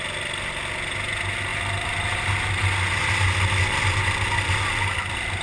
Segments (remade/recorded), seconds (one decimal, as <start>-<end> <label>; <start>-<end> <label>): 0.0-5.4 recorded